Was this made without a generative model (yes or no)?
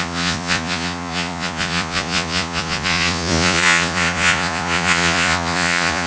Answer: no